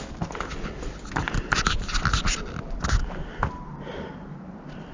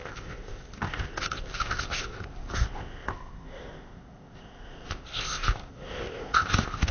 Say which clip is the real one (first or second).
first